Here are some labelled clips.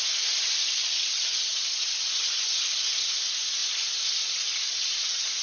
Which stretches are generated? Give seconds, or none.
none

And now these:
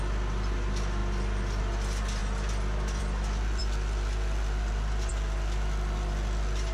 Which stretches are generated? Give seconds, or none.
2.2-3.0